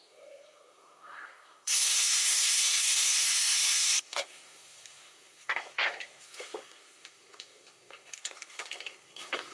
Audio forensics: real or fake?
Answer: fake